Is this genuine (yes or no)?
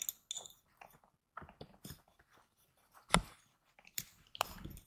yes